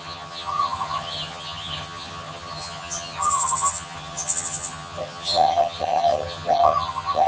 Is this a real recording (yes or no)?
no